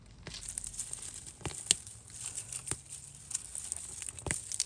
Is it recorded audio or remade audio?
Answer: recorded